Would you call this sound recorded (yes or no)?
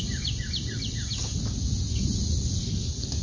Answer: yes